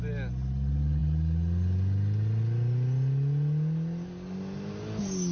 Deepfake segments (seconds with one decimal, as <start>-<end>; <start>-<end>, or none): none